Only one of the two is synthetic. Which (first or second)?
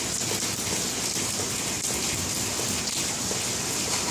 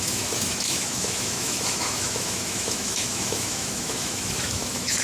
second